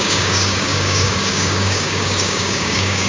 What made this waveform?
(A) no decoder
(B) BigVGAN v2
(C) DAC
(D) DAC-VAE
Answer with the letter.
C